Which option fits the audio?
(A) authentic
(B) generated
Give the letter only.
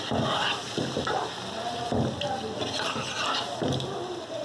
A